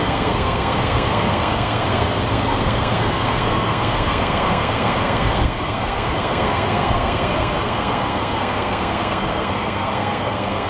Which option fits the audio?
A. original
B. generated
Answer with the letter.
B